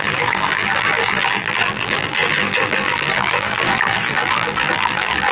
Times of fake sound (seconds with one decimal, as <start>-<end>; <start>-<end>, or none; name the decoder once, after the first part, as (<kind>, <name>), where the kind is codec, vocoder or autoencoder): 0.0-5.3 (vocoder, BigVGAN v2)